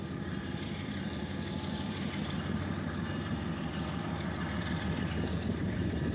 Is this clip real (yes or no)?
no